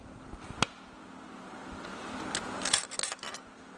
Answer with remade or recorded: recorded